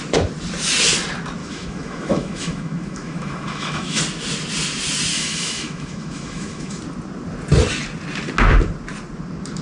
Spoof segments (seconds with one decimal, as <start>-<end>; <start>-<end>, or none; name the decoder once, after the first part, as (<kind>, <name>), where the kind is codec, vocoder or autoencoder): 1.4-4.0 (autoencoder, DAC-VAE); 5.1-6.8

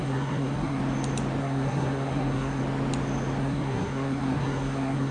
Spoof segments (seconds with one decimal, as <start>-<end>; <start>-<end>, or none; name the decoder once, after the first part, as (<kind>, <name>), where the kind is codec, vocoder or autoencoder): 0.0-0.8 (codec, SNAC); 1.4-2.6; 3.4-5.1

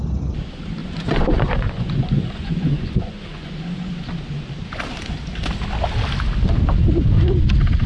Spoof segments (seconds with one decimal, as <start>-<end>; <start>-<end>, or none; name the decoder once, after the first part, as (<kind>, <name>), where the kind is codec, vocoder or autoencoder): 0.8-3.5 (vocoder, Vocos)

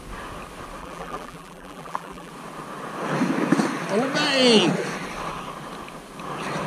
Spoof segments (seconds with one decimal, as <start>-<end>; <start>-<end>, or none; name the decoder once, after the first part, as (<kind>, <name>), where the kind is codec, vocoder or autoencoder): 0.8-2.3 (vocoder, BigVGAN v2)

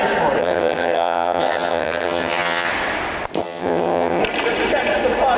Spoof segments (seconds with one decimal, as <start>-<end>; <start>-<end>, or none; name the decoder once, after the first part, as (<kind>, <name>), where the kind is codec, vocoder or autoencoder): 0.4-2.7 (vocoder, HiFi-GAN); 3.4-4.2

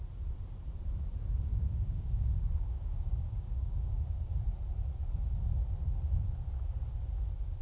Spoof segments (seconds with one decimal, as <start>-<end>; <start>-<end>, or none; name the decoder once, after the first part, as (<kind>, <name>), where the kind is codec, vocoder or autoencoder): 1.5-4.4 (codec, DAC)

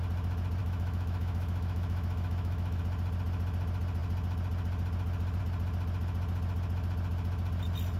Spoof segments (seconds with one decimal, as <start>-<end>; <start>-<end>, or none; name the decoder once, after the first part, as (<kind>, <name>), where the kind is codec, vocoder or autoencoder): 0.6-2.8 (autoencoder, DAC-VAE)